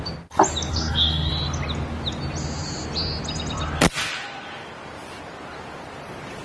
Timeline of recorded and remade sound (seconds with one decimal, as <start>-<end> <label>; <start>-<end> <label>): 0.0-0.7 recorded; 0.7-1.3 remade; 1.3-6.4 recorded